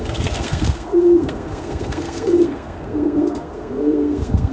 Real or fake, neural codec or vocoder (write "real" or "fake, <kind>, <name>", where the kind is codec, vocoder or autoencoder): fake, codec, SNAC